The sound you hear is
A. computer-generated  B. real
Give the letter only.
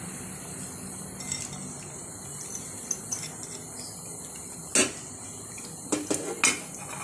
B